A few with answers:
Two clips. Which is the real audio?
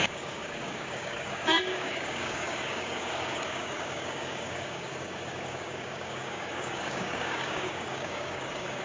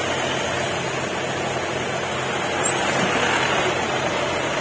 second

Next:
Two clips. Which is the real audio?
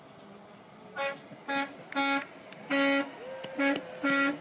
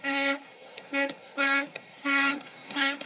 first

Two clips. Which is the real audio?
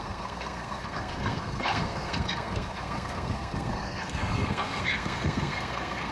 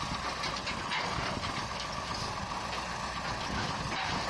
second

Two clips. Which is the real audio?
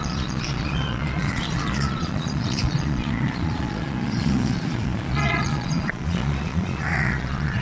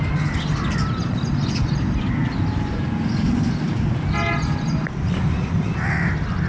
second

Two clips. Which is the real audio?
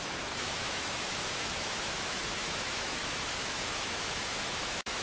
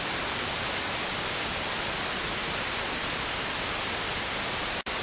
second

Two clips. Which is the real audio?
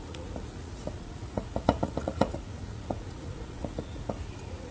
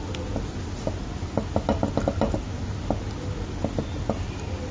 second